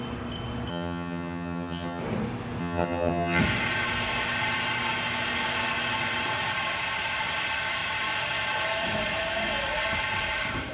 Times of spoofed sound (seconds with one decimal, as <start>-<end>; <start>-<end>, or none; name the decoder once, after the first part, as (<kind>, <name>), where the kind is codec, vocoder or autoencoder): 0.7-2.0 (vocoder, HiFi-GAN); 2.6-3.4